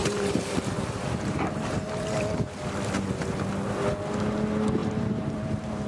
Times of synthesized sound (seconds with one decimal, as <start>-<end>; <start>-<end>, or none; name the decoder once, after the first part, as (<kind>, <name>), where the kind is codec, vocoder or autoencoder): 0.0-2.6 (vocoder, BigVGAN v2); 4.8-5.9